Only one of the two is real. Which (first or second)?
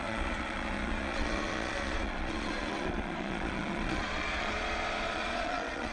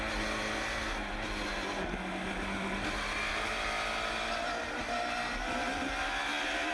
second